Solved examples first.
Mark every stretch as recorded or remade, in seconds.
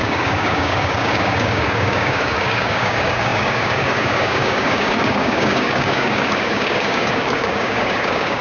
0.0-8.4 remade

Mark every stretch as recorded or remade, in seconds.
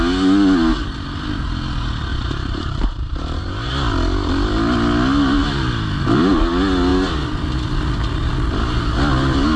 0.0-2.1 recorded; 2.1-3.7 remade; 3.7-9.6 recorded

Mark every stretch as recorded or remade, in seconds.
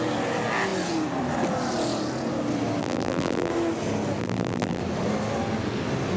0.0-2.8 recorded; 2.8-3.5 remade; 3.5-4.2 recorded; 4.2-4.8 remade; 4.8-6.2 recorded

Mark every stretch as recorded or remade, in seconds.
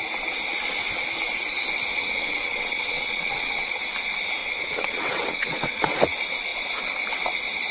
0.0-1.9 recorded; 1.9-3.7 remade; 3.7-4.4 recorded; 4.4-6.0 remade; 6.0-7.7 recorded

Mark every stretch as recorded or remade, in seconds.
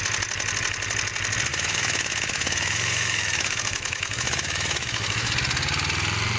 0.0-1.5 recorded; 1.5-5.3 remade; 5.3-6.4 recorded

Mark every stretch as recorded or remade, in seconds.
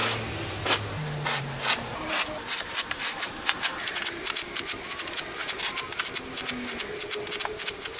0.0-0.5 remade; 0.5-1.9 recorded; 1.9-4.4 remade; 4.4-8.0 recorded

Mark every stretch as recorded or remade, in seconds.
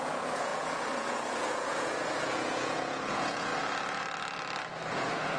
0.0-3.5 remade; 3.5-4.9 recorded; 4.9-5.4 remade